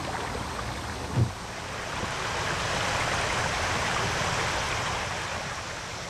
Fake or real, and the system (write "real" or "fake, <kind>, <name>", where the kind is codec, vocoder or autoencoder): real